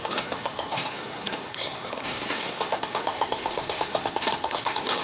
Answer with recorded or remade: remade